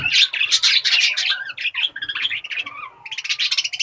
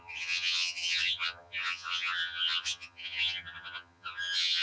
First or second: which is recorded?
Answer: first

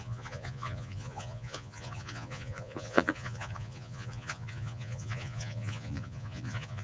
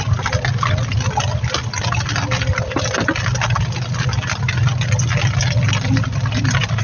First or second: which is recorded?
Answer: second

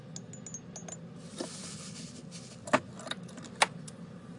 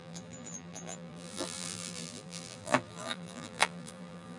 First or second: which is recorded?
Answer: first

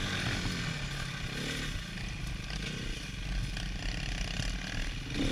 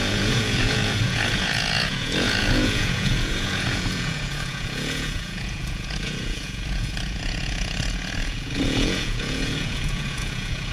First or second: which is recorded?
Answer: first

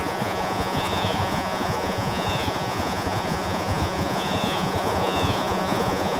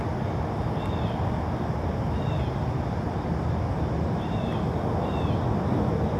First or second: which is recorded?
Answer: second